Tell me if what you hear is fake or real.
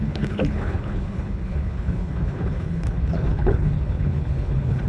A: fake